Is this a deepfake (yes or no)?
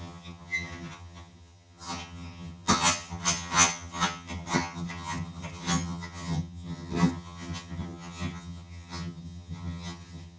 yes